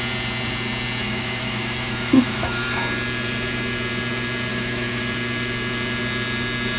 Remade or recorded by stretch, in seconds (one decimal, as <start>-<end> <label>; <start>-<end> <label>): 0.0-1.0 recorded; 1.0-2.8 remade; 2.8-4.5 recorded; 4.5-5.0 remade; 5.0-6.8 recorded

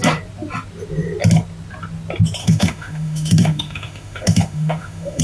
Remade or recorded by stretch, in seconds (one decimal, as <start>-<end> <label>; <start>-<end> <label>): 0.0-2.4 recorded; 2.4-5.2 remade

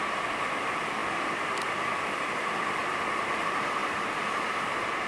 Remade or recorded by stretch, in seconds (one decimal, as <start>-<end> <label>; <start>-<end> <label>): 0.0-2.8 remade; 2.8-3.4 recorded; 3.4-3.8 remade; 3.8-5.1 recorded